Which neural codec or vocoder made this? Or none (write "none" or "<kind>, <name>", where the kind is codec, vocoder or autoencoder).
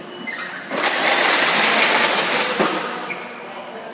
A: none